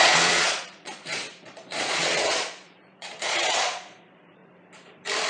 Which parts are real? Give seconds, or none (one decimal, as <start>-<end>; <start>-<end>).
4.4-5.3